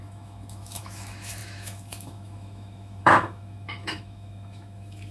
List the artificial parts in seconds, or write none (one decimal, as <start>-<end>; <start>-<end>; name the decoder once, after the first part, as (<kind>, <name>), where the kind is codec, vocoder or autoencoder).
0.0-5.1 (autoencoder, DAC-VAE)